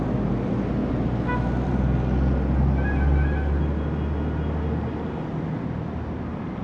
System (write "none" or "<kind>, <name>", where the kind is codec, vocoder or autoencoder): none